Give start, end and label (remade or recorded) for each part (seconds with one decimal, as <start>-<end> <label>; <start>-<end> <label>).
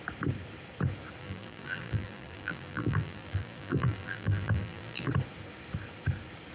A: 0.0-1.2 recorded; 1.2-5.1 remade; 5.1-6.5 recorded